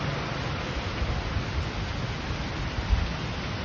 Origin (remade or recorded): recorded